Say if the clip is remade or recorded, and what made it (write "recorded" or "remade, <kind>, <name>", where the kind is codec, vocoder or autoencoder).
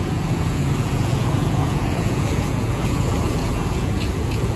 remade, vocoder, Vocos